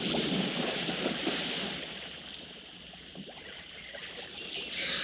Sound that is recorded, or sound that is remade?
recorded